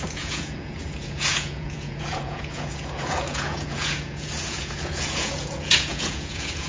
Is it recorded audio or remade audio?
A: remade